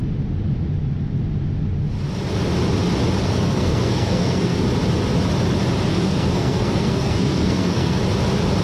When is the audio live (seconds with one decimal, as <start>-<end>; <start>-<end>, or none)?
0.0-3.2; 4.6-5.9; 8.0-8.6